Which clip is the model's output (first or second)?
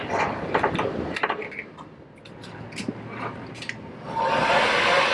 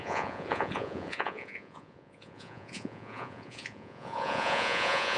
second